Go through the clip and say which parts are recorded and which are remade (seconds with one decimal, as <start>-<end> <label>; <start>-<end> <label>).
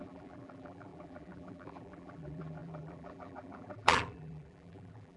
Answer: 0.0-5.2 remade